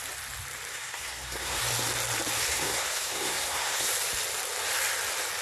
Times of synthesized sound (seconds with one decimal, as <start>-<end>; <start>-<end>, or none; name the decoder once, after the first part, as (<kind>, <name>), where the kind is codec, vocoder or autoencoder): 0.7-1.6 (codec, SNAC); 2.5-3.9